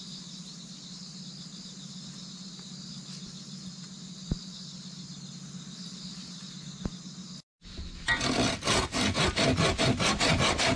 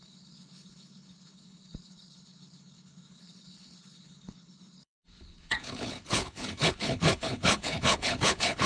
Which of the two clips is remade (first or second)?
second